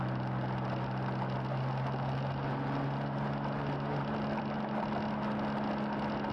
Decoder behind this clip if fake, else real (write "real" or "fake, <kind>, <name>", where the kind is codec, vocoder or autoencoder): real